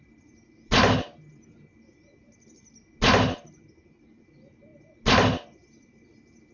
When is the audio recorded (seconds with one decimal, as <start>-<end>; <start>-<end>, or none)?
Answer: 0.0-6.5